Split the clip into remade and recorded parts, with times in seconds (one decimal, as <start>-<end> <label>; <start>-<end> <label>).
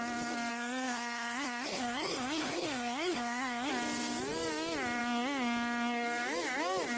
0.0-0.5 recorded; 0.5-3.7 remade; 3.7-7.0 recorded